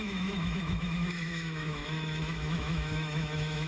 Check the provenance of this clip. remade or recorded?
remade